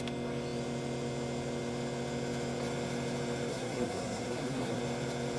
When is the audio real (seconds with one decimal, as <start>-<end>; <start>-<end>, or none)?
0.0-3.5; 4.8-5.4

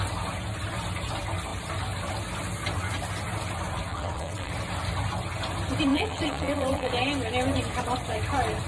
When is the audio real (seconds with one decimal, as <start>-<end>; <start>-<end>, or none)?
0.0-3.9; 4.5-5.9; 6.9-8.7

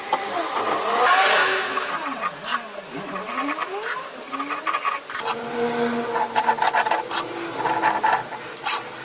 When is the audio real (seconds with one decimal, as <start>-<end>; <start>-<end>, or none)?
0.0-1.4; 1.9-9.0